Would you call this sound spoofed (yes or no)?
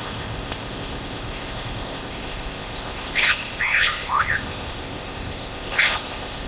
yes